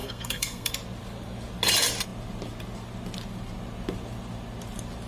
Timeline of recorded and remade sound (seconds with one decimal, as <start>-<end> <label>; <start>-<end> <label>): 0.0-0.7 remade; 0.7-5.1 recorded